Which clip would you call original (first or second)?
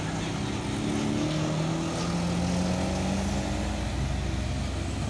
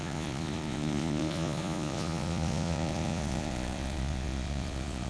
first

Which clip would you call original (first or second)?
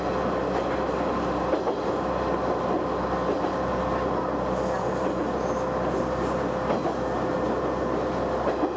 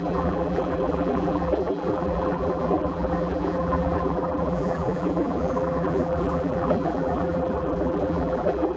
first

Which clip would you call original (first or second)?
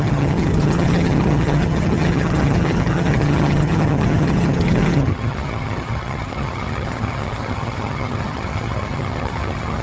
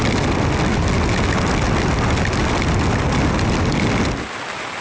second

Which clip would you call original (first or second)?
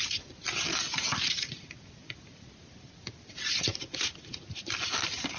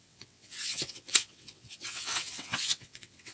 first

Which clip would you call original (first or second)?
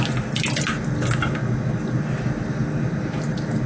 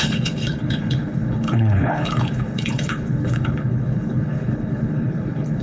first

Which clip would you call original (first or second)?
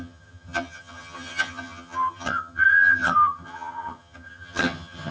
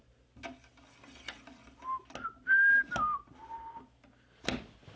second